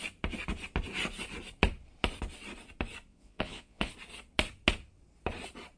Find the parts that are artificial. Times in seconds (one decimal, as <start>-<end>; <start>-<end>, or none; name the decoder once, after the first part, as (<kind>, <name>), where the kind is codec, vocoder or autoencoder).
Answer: 3.1-3.9 (vocoder, Vocos)